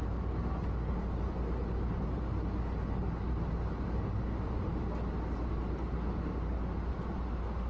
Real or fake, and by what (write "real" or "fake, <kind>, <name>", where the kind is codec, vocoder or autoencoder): real